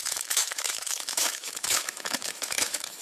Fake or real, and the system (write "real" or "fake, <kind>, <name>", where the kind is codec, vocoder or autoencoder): fake, autoencoder, DAC-VAE